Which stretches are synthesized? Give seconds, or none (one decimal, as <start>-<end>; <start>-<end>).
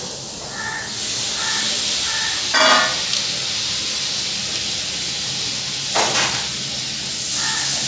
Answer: none